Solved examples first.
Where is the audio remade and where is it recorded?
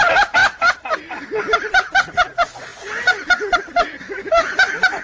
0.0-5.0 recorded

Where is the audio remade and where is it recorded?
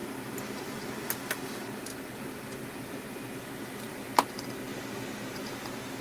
0.0-1.9 recorded; 1.9-5.5 remade; 5.5-6.0 recorded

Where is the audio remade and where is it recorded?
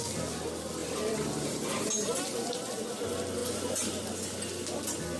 0.0-0.8 recorded; 0.8-1.9 remade; 1.9-5.2 recorded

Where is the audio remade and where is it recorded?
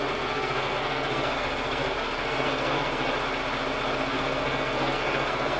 0.0-3.1 remade; 3.1-4.1 recorded; 4.1-5.6 remade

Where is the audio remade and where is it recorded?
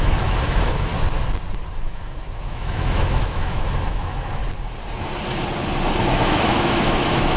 0.0-0.9 remade; 0.9-1.8 recorded; 1.8-4.4 remade; 4.4-6.0 recorded; 6.0-7.4 remade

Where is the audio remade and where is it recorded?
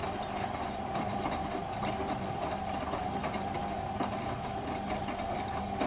0.0-3.5 remade; 3.5-5.9 recorded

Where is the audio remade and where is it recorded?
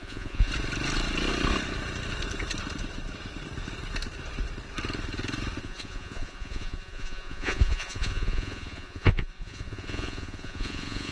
0.0-0.5 remade; 0.5-5.6 recorded; 5.6-11.1 remade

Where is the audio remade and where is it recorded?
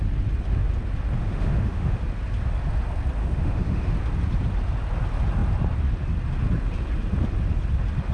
0.0-1.2 recorded; 1.2-2.0 remade; 2.0-3.2 recorded; 3.2-3.9 remade; 3.9-8.1 recorded